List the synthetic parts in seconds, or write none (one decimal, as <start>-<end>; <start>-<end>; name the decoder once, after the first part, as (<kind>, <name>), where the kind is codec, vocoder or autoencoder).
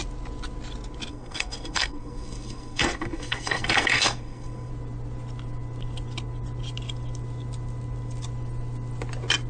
1.1-4.7 (codec, SNAC)